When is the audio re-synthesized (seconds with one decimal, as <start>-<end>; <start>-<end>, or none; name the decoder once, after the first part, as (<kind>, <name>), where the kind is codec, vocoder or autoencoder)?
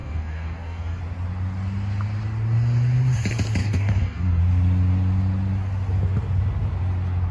0.0-1.0 (codec, DAC); 3.6-4.4